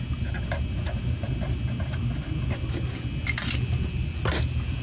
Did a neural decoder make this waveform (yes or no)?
no